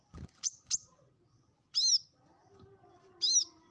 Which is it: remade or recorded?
recorded